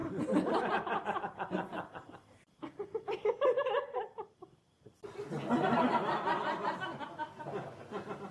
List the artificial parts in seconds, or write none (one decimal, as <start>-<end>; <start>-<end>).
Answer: none